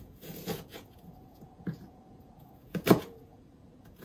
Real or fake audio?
fake